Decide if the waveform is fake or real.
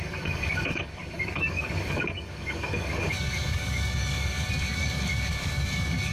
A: fake